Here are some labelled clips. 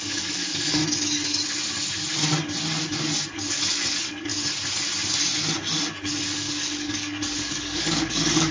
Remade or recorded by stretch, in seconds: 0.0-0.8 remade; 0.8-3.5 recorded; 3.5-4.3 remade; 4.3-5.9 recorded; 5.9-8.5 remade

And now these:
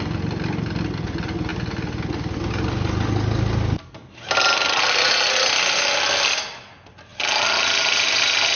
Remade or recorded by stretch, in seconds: 0.0-8.6 recorded

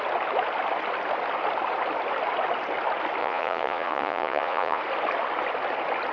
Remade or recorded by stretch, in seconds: 0.0-3.2 recorded; 3.2-4.8 remade; 4.8-6.1 recorded

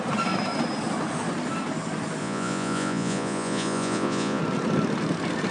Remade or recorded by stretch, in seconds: 0.0-2.2 recorded; 2.2-4.4 remade; 4.4-5.5 recorded

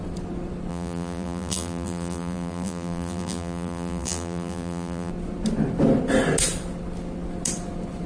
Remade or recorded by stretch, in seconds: 0.0-0.7 recorded; 0.7-5.1 remade; 5.1-8.1 recorded